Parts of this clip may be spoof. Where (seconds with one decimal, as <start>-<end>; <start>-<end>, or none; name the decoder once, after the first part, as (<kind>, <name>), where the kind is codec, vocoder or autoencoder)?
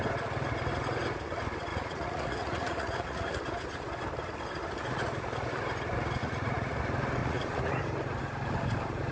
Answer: 1.7-3.4 (vocoder, Vocos); 6.2-6.8; 7.2-7.8